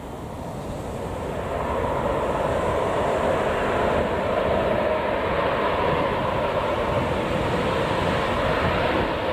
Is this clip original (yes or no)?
yes